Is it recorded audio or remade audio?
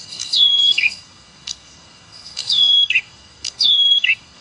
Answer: remade